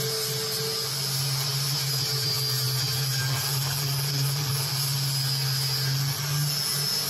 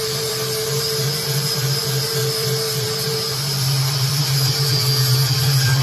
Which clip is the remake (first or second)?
second